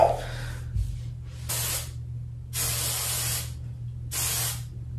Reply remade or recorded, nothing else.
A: recorded